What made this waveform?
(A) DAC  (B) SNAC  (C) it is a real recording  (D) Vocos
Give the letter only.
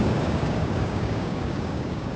A